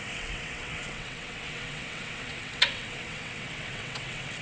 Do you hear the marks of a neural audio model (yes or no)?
yes